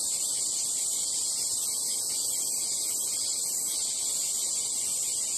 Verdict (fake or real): real